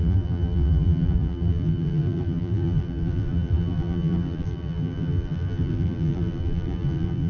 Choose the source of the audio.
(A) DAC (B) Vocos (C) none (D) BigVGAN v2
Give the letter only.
D